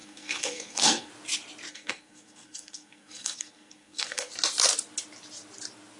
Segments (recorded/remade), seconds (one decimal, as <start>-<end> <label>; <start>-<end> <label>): 0.0-1.1 remade; 1.1-1.7 recorded; 1.7-4.3 remade; 4.3-6.0 recorded